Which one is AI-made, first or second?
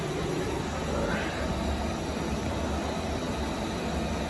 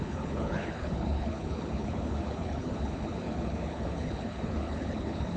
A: second